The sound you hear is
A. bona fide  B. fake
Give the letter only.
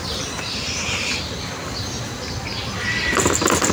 A